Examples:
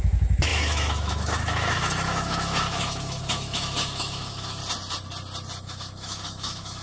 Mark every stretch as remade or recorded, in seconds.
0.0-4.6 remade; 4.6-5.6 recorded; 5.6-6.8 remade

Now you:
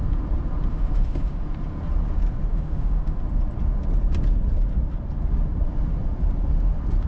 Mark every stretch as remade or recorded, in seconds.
0.0-0.7 recorded; 0.7-1.4 remade; 1.4-2.5 recorded; 2.5-3.2 remade; 3.2-7.1 recorded